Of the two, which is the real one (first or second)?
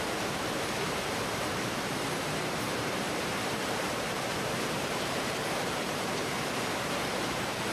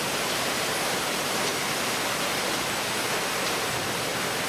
second